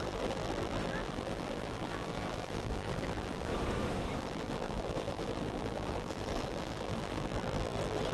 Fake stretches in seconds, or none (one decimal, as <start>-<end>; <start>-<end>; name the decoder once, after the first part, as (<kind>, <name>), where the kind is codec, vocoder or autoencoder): 0.0-3.5 (vocoder, BigVGAN v2); 4.2-8.1